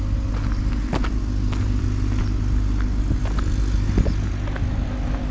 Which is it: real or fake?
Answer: real